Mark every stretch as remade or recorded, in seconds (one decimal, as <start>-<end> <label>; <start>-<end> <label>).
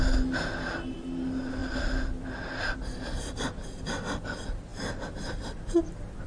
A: 0.0-6.3 recorded